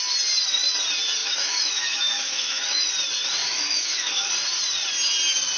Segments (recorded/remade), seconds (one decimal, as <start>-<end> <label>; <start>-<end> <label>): 0.0-1.2 recorded; 1.2-2.9 remade; 2.9-3.4 recorded; 3.4-4.3 remade; 4.3-5.6 recorded